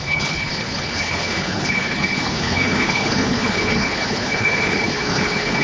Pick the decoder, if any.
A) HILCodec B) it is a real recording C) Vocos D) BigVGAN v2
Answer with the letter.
A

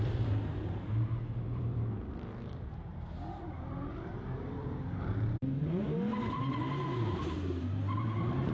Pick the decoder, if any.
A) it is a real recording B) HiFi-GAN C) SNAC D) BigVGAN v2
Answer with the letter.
D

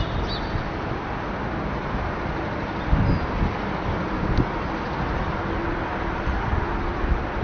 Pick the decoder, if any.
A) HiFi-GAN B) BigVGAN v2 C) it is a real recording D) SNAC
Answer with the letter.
C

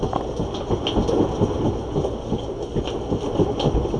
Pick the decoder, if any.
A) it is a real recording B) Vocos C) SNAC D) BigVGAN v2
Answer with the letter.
A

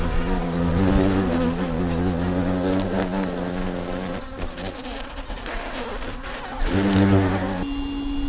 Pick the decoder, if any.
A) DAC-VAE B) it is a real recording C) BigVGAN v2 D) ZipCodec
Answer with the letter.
B